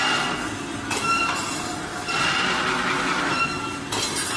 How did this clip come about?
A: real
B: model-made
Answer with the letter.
A